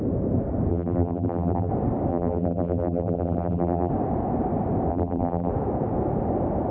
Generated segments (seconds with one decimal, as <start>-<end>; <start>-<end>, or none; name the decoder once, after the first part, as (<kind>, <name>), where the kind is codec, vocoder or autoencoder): 0.7-1.7 (vocoder, BigVGAN v2); 2.1-3.9; 4.9-5.5